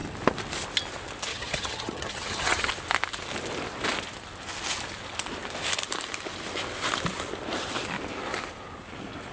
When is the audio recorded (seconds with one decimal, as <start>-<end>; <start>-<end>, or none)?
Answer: 0.0-1.3; 2.7-9.3